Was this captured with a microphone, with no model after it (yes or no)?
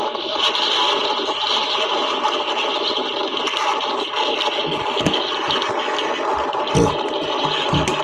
yes